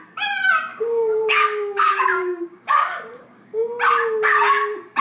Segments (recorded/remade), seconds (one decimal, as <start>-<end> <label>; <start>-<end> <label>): 0.0-0.7 recorded; 0.7-3.7 remade; 3.7-5.0 recorded